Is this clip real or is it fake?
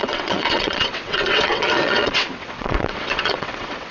fake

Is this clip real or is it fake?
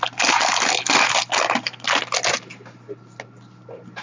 real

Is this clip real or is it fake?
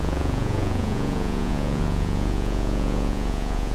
fake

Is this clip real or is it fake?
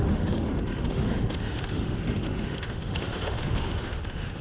fake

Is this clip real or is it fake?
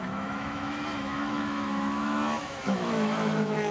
fake